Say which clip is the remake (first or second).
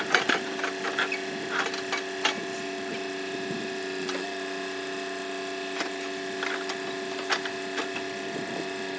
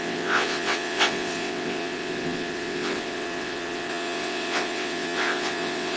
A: second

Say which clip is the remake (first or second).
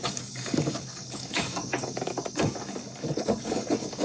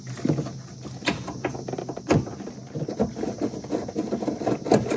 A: first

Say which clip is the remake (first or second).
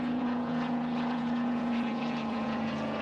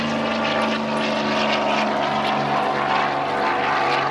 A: first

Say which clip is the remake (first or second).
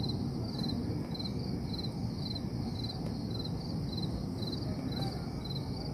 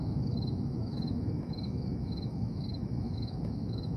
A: second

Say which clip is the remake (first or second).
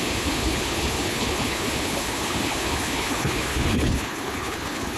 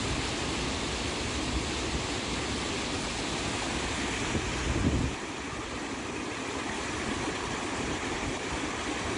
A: first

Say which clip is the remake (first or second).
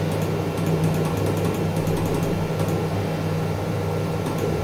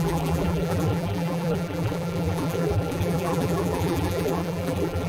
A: second